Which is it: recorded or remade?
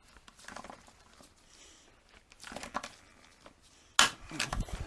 recorded